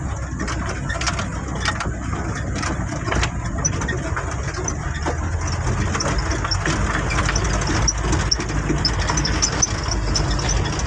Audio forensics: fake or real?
real